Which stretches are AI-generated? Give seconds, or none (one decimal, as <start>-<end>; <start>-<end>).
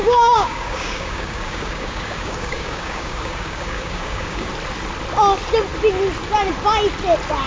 0.0-4.5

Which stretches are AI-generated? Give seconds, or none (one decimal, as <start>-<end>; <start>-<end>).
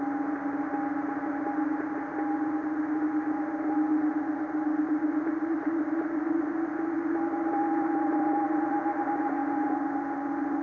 none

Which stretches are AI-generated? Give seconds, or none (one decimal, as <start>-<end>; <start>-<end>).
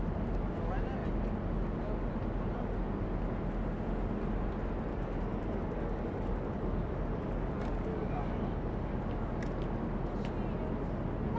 4.9-7.5; 7.9-8.9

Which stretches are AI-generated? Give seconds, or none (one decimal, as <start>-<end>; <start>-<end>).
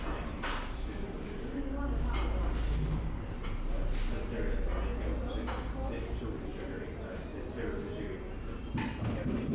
none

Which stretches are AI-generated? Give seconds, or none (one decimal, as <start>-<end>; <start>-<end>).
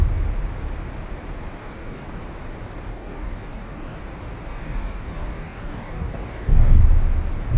1.6-2.2; 2.9-4.0; 4.5-6.8